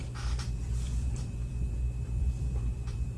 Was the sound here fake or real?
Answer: fake